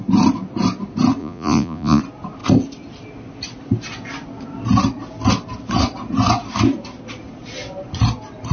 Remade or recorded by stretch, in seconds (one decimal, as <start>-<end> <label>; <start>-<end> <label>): 0.0-1.2 recorded; 1.2-2.0 remade; 2.0-8.5 recorded